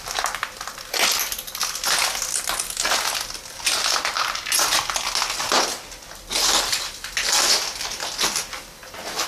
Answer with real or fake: real